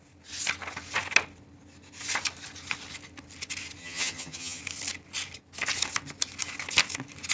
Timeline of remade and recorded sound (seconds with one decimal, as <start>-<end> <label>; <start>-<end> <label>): 0.0-3.8 recorded; 3.8-4.6 remade; 4.6-7.3 recorded